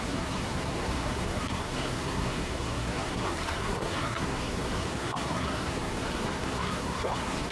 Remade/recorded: remade